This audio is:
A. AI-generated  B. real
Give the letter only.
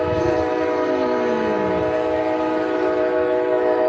B